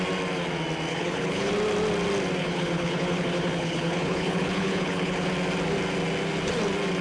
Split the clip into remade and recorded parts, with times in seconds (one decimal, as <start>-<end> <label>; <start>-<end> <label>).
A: 0.0-0.9 recorded; 0.9-1.5 remade; 1.5-2.4 recorded; 2.4-5.3 remade; 5.3-7.0 recorded